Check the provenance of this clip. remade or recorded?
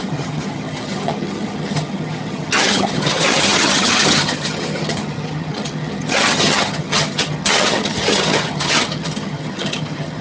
remade